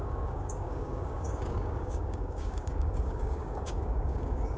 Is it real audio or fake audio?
fake